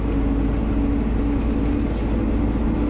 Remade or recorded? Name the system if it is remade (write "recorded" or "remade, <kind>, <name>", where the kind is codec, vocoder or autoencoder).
recorded